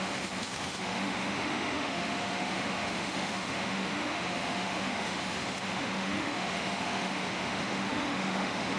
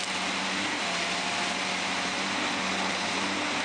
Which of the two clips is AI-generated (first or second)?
first